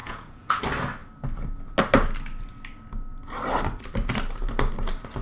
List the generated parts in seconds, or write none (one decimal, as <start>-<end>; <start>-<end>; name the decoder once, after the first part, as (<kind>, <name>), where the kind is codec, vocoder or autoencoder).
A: 0.0-0.6 (vocoder, Vocos)